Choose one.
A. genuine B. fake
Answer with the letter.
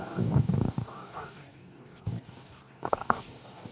B